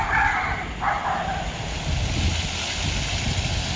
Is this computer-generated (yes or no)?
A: no